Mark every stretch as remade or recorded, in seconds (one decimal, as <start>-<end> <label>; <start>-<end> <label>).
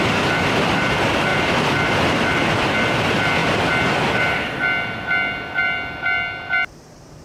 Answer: 0.0-1.3 remade; 1.3-2.1 recorded; 2.1-3.4 remade; 3.4-4.2 recorded; 4.2-7.2 remade